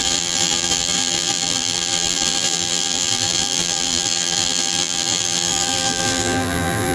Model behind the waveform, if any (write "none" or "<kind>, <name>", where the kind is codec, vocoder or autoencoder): vocoder, BigVGAN v2